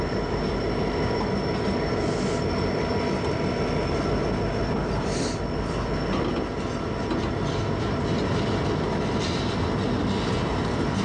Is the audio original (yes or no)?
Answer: yes